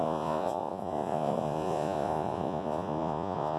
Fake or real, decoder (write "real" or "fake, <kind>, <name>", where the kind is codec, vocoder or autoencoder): fake, vocoder, Vocos